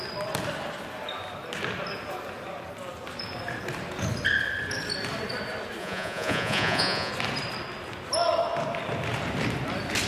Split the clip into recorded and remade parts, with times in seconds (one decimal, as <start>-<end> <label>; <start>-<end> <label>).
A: 0.0-5.8 recorded; 5.8-7.1 remade; 7.1-10.1 recorded